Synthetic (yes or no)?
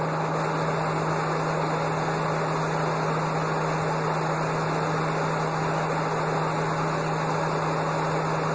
no